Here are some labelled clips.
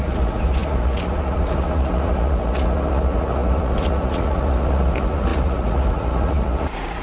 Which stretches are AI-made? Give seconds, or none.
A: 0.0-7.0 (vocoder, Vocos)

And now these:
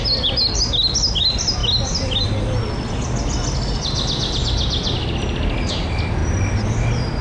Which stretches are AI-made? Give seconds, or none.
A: none

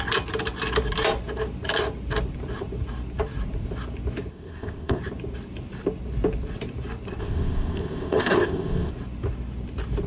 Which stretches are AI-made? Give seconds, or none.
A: 4.3-5.0 (codec, ZipCodec); 7.2-8.9

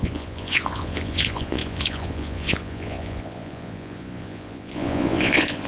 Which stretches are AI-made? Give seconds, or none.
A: 0.0-5.7 (vocoder, Vocos)

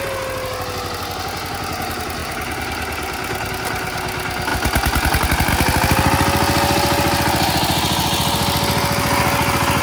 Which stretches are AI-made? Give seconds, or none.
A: none

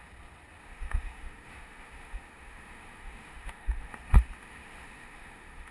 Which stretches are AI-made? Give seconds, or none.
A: 0.6-4.0 (autoencoder, DAC-VAE); 4.4-5.7

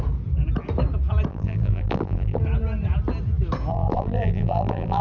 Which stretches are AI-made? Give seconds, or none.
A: 1.3-2.4 (vocoder, BigVGAN v2); 3.7-5.0